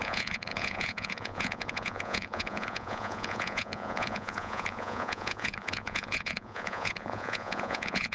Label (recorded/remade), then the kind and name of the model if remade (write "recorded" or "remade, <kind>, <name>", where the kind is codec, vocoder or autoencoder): remade, vocoder, Vocos